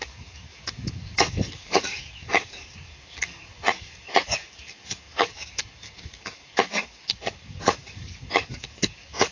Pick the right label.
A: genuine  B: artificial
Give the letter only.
B